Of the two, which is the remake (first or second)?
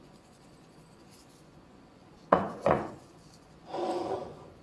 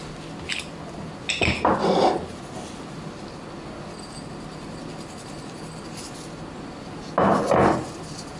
first